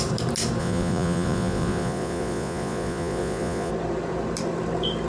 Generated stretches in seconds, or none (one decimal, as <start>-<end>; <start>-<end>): 0.6-3.7